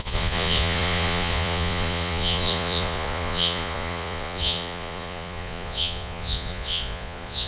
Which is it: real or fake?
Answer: fake